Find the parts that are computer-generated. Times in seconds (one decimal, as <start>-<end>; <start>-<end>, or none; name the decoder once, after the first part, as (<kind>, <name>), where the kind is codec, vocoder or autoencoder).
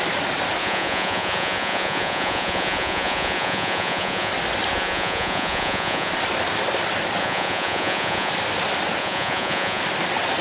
0.6-4.3 (vocoder, Vocos); 4.7-6.1; 7.2-8.3; 9.0-9.8